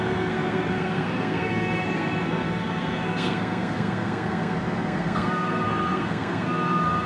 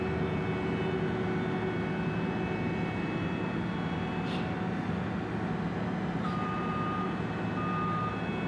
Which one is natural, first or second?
second